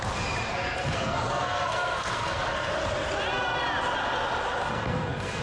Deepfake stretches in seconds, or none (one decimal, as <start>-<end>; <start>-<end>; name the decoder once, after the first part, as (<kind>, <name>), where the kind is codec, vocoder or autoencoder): 0.5-2.7 (codec, SNAC); 4.6-5.4